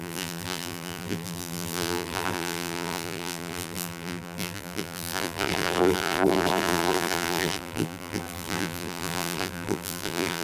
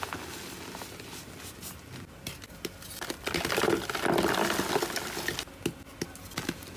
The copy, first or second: first